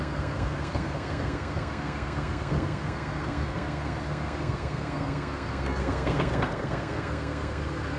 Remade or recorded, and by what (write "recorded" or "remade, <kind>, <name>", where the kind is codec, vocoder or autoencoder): remade, codec, SNAC